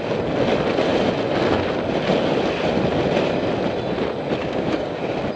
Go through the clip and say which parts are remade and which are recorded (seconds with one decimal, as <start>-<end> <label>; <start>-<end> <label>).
0.0-4.4 recorded; 4.4-5.0 remade; 5.0-5.4 recorded